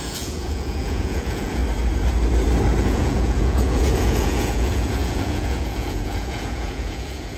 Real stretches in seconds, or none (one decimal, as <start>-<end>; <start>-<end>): 1.6-2.8